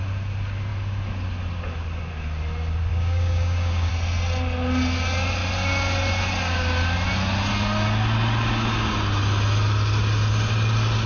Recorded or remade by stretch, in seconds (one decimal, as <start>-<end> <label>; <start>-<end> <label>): 0.0-2.9 recorded; 2.9-3.9 remade; 3.9-11.1 recorded